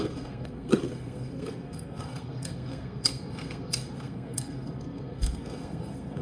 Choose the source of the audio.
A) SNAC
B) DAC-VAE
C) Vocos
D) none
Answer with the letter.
A